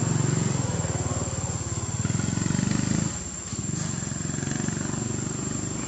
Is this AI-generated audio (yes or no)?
no